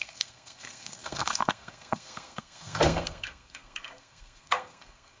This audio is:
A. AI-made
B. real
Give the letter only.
A